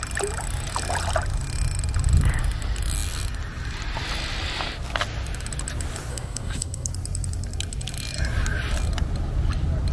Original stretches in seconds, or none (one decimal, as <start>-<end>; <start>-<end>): 0.0-6.1; 6.9-9.9

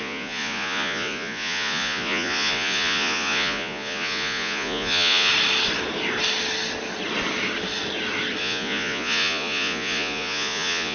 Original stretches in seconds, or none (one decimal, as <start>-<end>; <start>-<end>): 5.3-8.4

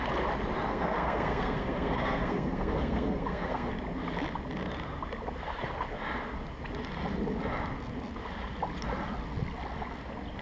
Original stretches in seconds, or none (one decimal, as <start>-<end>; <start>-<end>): 0.0-0.7; 3.7-10.4